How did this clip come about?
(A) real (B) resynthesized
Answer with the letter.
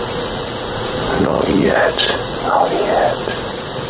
B